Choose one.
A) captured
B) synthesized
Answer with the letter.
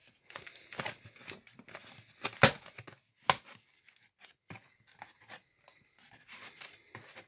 A